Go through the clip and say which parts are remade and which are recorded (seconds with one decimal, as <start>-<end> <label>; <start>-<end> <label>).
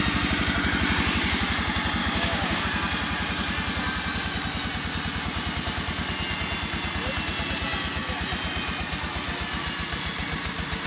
0.0-2.0 recorded; 2.0-2.6 remade; 2.6-10.9 recorded